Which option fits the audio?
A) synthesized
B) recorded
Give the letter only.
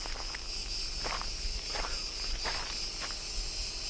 B